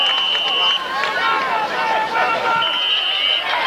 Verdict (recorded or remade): recorded